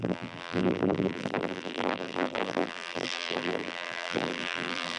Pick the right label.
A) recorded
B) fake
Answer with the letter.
B